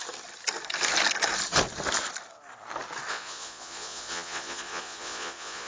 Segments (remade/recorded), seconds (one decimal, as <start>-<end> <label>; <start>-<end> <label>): 0.0-3.1 recorded; 3.1-5.7 remade